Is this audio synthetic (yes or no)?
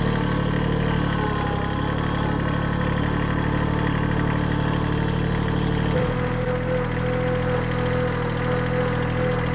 no